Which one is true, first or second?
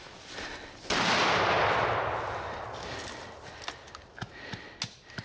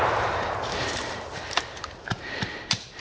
first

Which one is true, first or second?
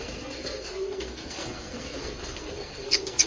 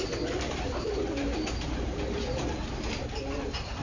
second